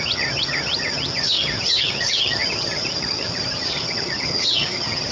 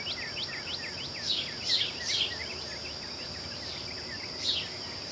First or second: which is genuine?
second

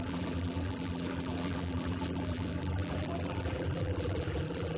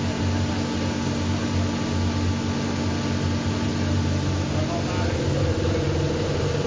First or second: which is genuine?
second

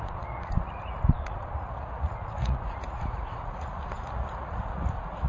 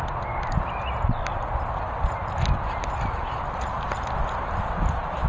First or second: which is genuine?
second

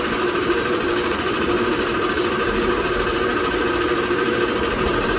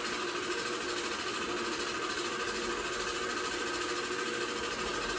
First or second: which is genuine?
second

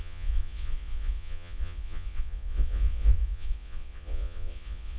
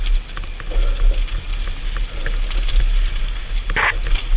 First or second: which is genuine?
second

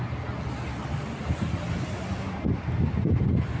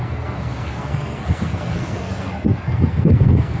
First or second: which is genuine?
first